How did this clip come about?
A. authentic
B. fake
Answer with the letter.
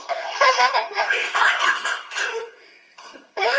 B